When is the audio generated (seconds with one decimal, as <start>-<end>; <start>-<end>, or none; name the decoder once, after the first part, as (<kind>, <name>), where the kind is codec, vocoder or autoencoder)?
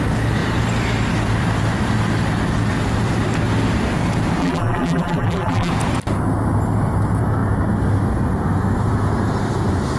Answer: 4.4-5.7 (vocoder, BigVGAN v2)